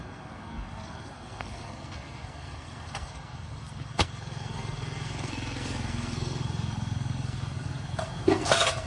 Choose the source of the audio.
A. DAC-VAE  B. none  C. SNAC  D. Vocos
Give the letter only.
C